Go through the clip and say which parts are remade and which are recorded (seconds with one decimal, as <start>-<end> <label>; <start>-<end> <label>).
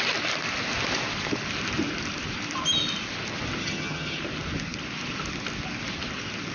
0.0-3.6 recorded; 3.6-4.2 remade; 4.2-6.5 recorded